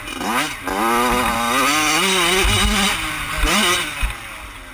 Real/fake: real